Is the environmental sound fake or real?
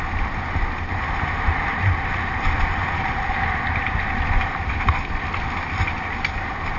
real